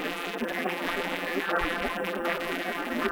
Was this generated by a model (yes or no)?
yes